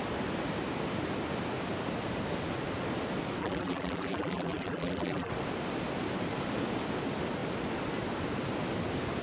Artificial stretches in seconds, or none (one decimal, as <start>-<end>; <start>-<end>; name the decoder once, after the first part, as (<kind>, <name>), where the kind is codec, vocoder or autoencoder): 3.4-5.3 (vocoder, BigVGAN v2)